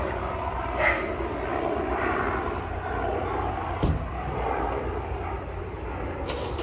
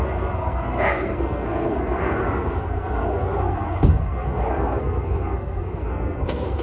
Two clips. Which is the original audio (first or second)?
first